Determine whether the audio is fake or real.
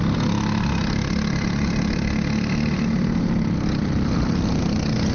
real